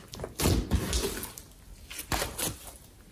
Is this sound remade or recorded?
recorded